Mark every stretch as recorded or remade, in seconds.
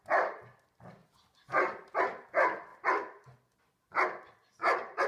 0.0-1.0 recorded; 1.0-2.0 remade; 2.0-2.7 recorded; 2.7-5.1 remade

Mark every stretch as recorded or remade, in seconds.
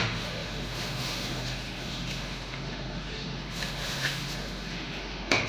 0.0-5.5 remade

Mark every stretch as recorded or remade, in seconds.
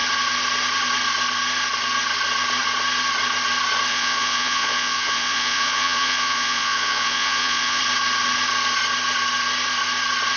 0.0-3.9 recorded; 3.9-7.8 remade; 7.8-10.4 recorded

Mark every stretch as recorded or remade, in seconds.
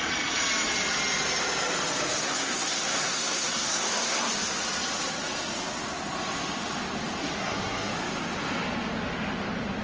0.0-2.2 recorded; 2.2-4.3 remade; 4.3-7.2 recorded; 7.2-7.9 remade; 7.9-9.8 recorded